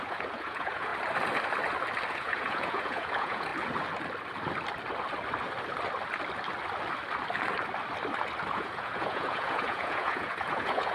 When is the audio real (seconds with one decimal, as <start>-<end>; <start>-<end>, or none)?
0.9-2.1; 3.5-8.5